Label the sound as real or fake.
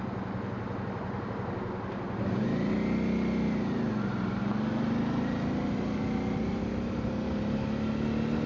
real